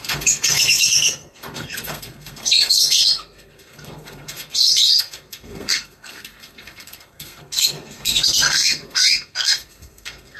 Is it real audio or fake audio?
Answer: fake